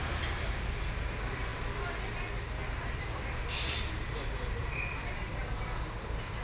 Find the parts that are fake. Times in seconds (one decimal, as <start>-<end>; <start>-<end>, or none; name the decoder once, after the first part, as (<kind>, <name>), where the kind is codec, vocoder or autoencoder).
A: 4.6-5.4 (vocoder, BigVGAN v2)